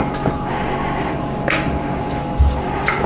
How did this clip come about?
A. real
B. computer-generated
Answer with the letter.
A